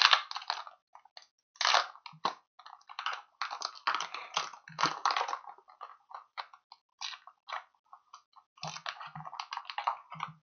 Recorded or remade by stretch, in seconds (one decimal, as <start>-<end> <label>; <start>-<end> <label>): 0.0-5.9 recorded; 5.9-6.4 remade; 6.4-10.5 recorded